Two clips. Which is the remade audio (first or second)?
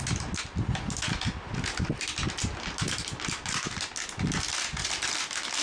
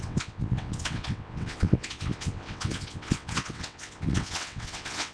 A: second